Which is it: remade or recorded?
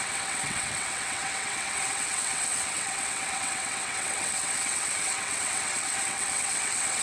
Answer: remade